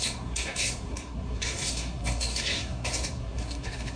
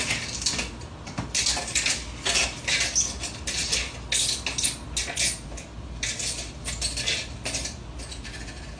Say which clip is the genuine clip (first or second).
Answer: second